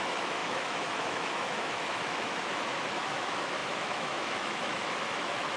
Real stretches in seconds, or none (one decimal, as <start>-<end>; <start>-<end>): none